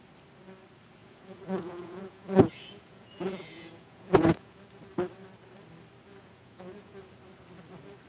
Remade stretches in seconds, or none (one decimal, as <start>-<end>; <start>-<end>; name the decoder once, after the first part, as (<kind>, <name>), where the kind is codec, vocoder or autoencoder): 1.0-4.6 (vocoder, Vocos); 6.1-7.0